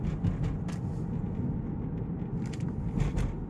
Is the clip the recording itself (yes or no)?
yes